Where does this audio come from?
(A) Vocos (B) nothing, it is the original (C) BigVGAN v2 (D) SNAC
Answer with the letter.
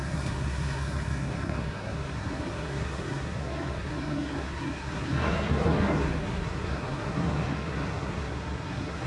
D